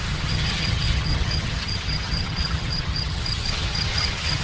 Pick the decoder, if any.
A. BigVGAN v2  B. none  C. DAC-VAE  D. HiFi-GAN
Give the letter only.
D